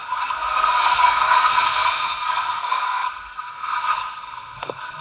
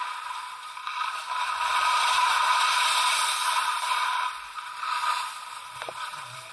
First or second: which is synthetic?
first